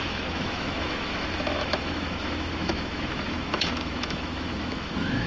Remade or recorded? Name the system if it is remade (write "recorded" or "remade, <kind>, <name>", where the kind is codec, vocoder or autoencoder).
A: remade, autoencoder, DAC-VAE